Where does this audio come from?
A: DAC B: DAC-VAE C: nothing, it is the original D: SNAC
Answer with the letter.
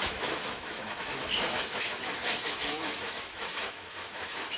B